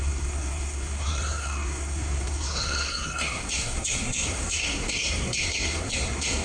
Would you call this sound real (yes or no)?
no